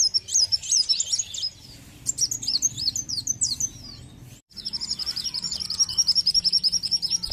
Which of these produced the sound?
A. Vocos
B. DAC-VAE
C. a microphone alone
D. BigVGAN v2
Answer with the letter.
D